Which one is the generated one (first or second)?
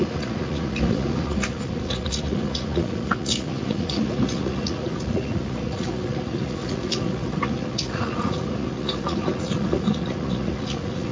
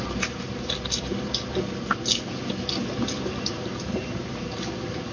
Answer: first